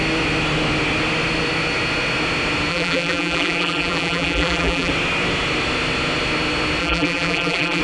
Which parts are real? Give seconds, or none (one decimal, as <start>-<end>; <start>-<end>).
0.0-2.7; 4.9-6.8